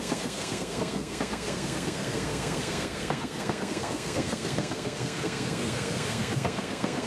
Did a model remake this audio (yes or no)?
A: yes